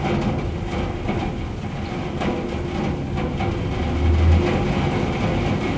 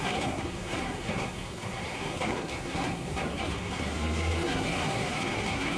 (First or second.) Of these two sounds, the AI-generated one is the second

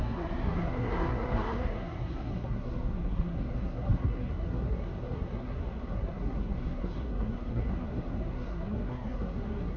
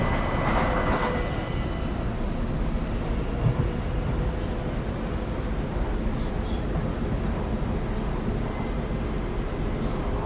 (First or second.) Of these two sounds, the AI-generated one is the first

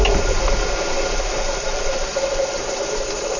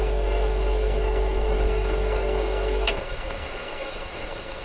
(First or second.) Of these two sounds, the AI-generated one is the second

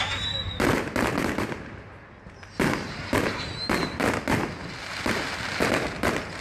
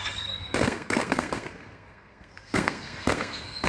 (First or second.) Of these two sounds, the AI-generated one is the second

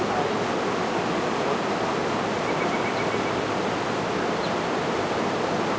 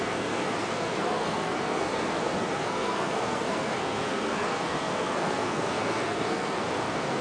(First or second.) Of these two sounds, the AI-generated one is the second